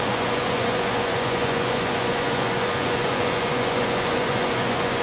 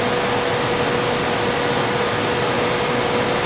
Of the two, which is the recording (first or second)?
second